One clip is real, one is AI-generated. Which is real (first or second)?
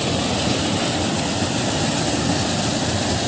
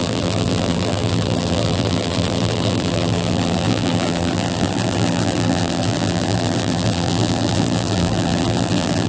first